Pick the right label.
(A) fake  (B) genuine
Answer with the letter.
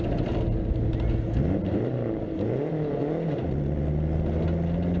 B